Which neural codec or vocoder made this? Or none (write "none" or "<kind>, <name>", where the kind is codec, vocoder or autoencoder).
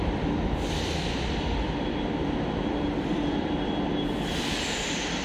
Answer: vocoder, BigVGAN v2